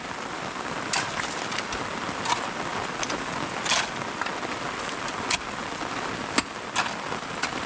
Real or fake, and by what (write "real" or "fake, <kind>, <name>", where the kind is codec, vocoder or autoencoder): real